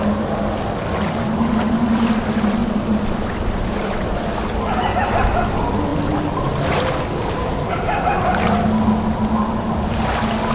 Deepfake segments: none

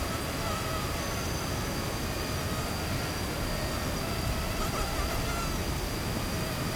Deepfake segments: none